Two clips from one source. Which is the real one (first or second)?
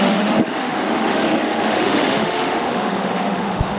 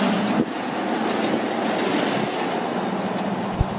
second